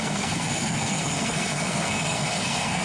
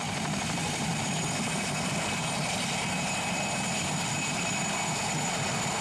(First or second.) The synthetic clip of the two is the first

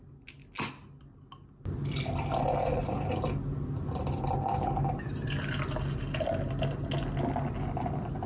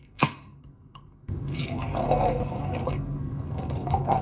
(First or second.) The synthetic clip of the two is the second